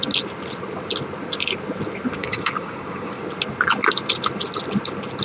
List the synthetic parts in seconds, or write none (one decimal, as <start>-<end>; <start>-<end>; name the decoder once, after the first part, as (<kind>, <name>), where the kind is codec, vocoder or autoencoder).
2.2-3.2 (codec, DAC)